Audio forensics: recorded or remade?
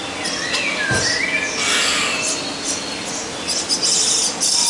recorded